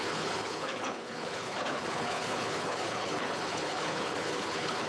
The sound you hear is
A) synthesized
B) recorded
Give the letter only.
A